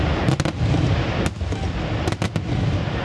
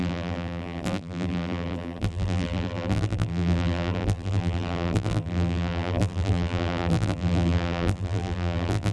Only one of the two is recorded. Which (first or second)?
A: first